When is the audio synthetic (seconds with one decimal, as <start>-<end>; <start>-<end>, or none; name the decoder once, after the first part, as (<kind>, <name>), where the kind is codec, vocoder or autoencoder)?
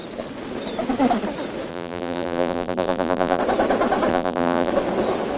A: 1.7-3.4 (vocoder, BigVGAN v2); 4.1-4.7